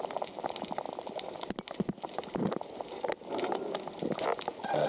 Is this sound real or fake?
real